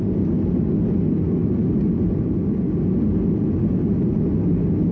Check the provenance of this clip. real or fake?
real